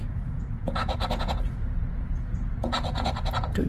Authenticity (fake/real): fake